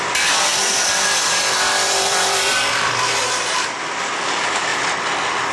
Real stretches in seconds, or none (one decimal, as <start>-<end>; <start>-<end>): 0.0-0.5; 3.8-4.7